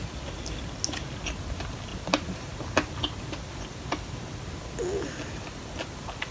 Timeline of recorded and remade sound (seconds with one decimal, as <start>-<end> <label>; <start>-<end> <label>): 0.0-6.3 recorded